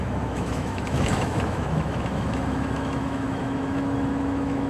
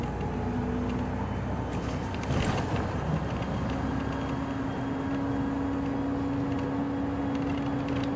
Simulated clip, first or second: first